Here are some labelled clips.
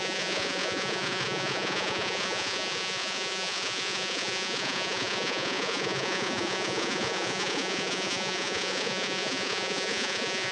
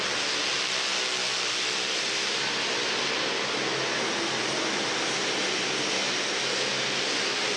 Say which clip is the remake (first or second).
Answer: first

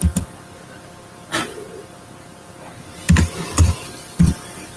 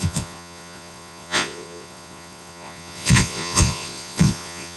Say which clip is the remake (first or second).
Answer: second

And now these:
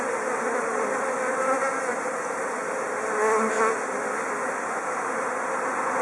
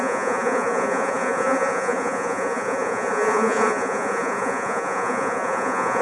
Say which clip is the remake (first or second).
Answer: second